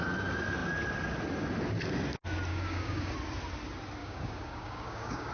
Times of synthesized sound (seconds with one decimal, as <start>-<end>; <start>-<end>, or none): 2.5-3.1; 4.0-5.3